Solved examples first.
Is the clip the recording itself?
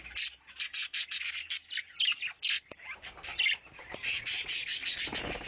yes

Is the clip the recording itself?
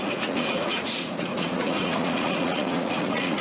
no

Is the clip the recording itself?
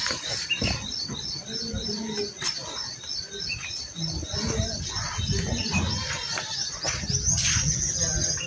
yes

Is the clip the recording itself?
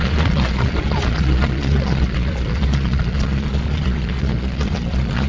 no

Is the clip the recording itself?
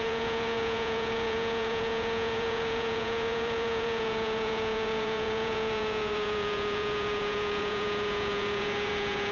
no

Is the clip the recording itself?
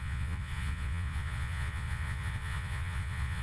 no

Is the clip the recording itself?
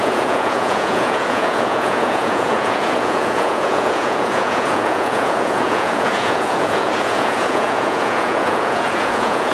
no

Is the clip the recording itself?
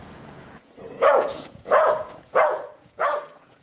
no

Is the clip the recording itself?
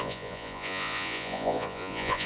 no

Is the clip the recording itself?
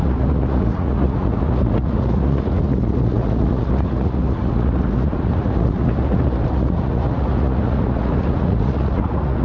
no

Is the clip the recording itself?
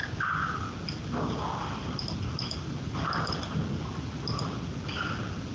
yes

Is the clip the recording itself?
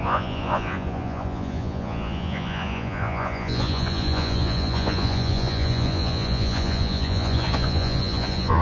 no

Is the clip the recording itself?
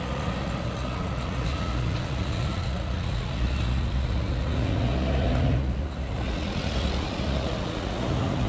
no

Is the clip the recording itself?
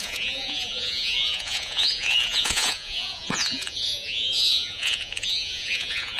no